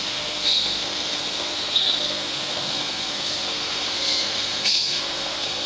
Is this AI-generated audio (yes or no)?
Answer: yes